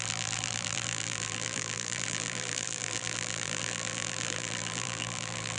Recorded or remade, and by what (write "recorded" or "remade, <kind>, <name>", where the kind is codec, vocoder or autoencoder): remade, vocoder, BigVGAN v2